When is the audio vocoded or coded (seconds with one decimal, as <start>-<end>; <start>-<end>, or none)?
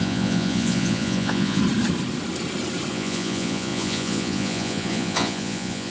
0.0-1.6; 2.9-5.9